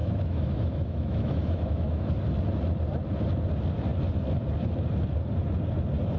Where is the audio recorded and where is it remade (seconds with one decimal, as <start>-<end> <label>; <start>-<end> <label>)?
0.0-2.1 remade; 2.1-6.2 recorded